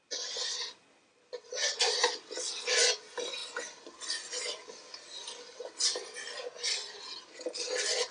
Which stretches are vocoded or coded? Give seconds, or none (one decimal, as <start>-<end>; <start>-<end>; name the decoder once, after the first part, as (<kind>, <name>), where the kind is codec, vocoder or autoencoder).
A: none